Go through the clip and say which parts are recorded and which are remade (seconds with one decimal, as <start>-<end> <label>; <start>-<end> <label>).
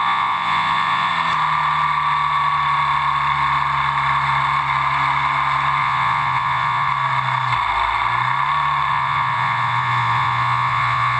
0.0-1.1 remade; 1.1-5.8 recorded; 5.8-6.9 remade; 6.9-8.9 recorded; 8.9-11.2 remade